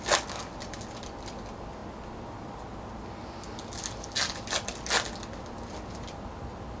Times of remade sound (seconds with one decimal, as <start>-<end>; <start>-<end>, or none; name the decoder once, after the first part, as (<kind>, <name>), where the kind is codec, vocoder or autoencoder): none

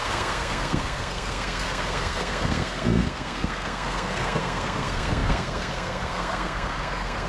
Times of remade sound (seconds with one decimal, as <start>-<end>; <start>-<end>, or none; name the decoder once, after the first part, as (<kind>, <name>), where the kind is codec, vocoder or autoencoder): 0.0-7.3 (codec, SNAC)

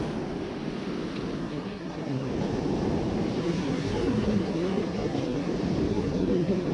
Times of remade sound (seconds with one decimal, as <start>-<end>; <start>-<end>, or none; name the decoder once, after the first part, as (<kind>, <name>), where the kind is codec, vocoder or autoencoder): 1.4-2.3 (codec, SNAC); 3.4-5.5; 5.9-6.7

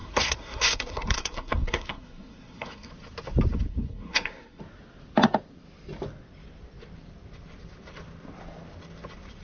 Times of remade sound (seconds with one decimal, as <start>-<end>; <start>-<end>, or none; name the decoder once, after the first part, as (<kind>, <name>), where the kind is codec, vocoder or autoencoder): 0.0-2.9 (codec, SNAC); 3.7-4.6

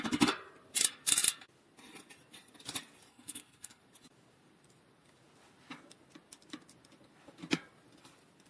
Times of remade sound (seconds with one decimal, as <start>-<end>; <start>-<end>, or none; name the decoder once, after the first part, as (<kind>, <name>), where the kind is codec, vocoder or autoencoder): 3.1-3.8 (codec, SNAC)